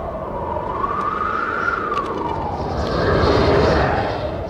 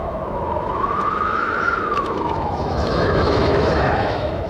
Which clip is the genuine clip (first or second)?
first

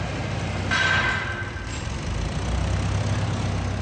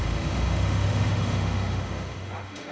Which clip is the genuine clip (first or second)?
first